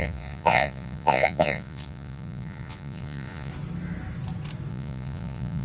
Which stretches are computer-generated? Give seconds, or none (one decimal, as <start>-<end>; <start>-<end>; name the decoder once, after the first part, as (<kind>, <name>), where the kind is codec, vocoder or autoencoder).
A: 0.0-3.5 (vocoder, Vocos); 4.7-5.6